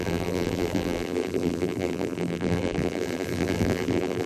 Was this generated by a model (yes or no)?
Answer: yes